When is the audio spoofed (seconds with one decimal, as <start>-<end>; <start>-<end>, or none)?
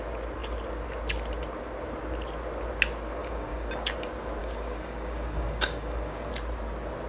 3.2-3.7; 4.4-6.3